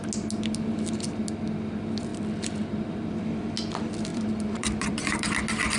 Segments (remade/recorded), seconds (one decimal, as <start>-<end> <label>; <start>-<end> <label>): 0.0-2.1 recorded; 2.1-2.9 remade; 2.9-4.1 recorded; 4.1-5.3 remade; 5.3-5.8 recorded